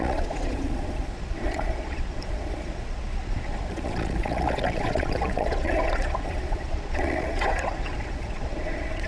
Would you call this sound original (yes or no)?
no